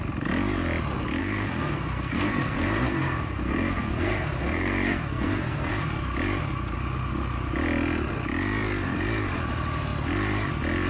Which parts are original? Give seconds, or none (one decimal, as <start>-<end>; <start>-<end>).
0.0-1.2; 5.7-10.9